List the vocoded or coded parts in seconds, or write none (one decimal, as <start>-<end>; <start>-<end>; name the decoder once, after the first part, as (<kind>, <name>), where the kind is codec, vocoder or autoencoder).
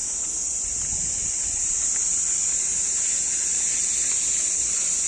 none